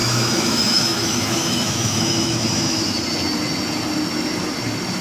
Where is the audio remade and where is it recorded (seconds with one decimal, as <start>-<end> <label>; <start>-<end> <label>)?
0.0-3.0 remade; 3.0-5.0 recorded